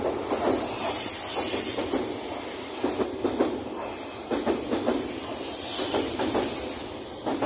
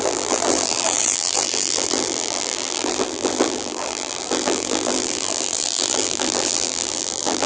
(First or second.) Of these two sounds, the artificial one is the second